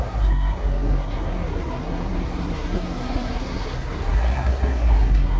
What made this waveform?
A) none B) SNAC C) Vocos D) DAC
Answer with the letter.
B